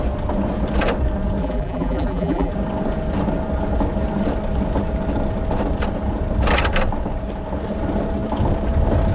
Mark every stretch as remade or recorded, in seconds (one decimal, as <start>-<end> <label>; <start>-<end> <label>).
0.0-1.4 recorded; 1.4-2.5 remade; 2.5-9.1 recorded